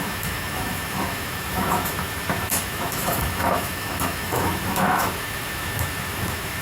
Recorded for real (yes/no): no